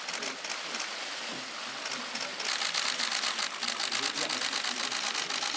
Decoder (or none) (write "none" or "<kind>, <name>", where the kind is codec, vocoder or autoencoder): none